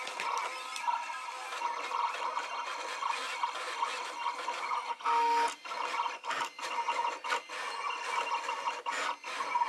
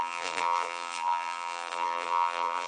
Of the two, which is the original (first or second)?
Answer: first